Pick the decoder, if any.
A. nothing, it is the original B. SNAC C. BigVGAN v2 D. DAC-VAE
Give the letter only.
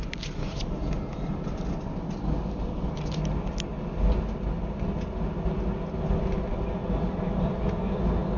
A